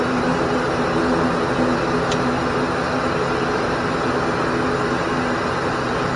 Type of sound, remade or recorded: recorded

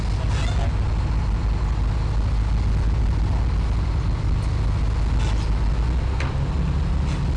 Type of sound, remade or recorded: recorded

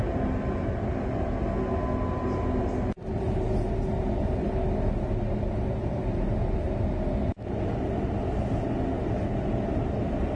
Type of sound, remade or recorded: recorded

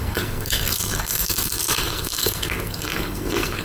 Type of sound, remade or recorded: remade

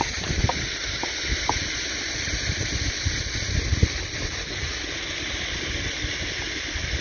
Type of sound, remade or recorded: recorded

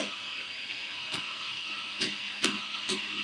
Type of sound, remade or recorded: remade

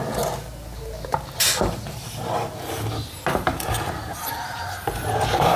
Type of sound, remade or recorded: recorded